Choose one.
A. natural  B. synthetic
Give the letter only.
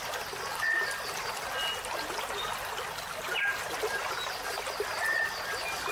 A